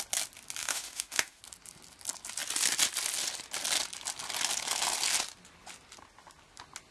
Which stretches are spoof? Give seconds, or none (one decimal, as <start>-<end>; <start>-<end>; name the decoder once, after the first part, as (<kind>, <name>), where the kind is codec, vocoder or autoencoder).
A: 0.6-1.4 (autoencoder, DAC-VAE)

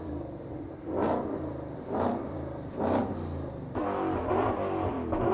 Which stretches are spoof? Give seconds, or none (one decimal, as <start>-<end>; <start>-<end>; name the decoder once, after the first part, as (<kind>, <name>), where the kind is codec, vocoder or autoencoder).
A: 0.0-3.0 (vocoder, BigVGAN v2); 4.3-5.3

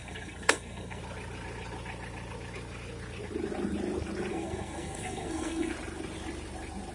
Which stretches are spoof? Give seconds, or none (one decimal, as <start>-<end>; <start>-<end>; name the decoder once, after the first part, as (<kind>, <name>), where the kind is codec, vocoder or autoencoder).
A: 0.0-1.0 (codec, SNAC); 4.3-5.7

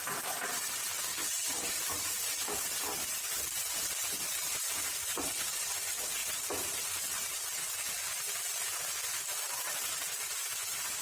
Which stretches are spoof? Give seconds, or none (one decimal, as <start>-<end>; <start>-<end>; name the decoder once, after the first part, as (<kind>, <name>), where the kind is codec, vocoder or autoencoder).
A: none

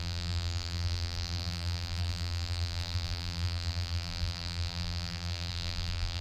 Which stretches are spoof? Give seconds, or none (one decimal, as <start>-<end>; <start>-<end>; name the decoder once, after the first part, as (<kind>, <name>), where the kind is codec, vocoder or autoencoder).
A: 0.0-6.2 (vocoder, BigVGAN v2)

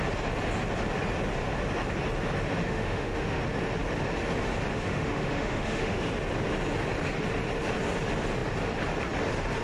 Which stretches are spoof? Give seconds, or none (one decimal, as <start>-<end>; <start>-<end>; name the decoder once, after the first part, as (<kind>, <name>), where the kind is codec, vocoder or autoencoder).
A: 2.6-3.4 (autoencoder, DAC-VAE); 4.7-6.1